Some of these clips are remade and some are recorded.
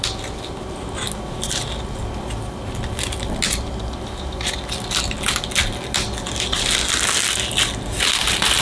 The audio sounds recorded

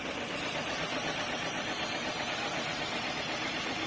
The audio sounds recorded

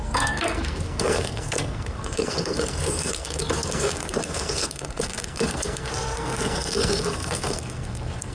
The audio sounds remade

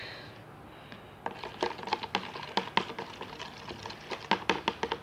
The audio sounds recorded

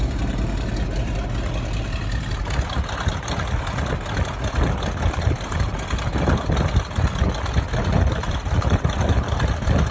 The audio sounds recorded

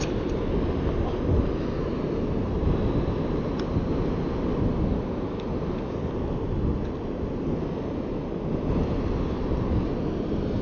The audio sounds recorded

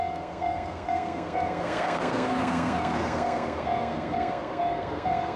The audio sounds remade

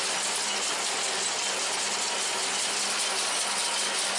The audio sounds recorded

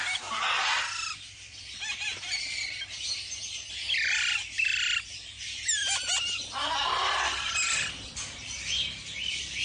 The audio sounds recorded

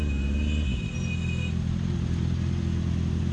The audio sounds recorded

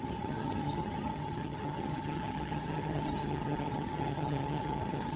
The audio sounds remade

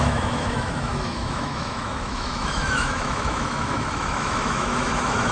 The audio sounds remade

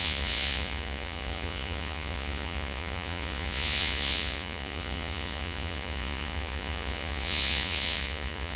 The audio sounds remade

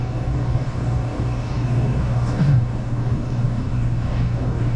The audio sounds remade